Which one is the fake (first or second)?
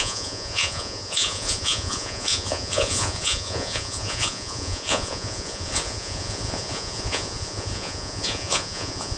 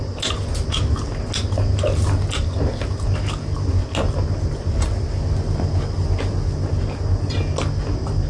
first